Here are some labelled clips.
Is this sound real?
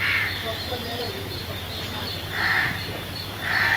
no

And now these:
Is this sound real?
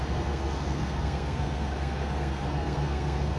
no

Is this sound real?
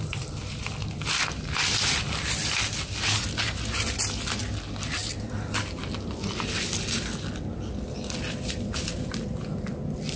yes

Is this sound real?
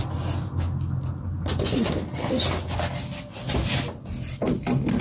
yes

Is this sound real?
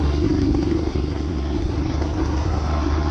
no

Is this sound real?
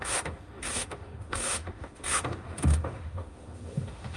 no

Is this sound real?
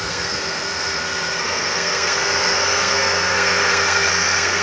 no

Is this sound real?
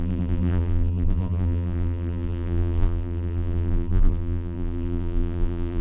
no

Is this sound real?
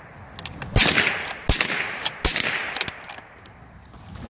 yes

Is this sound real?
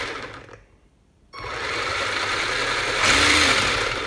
no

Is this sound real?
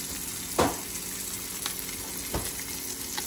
yes